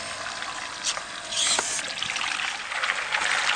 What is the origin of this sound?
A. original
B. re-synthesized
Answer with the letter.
A